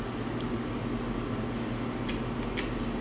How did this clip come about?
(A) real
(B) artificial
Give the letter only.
A